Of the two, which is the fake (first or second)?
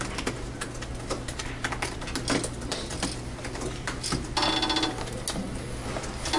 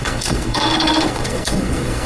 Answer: second